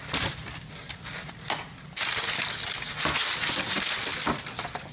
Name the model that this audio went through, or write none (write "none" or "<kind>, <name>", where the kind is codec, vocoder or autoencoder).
none